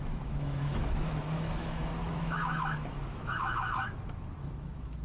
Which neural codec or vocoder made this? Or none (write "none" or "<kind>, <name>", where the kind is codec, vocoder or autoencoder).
autoencoder, DAC-VAE